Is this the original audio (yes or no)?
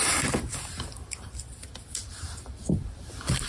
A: yes